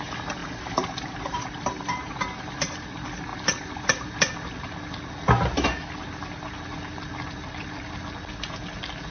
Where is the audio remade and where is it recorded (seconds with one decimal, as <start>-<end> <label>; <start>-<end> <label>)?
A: 0.0-0.4 recorded; 0.4-2.4 remade; 2.4-9.1 recorded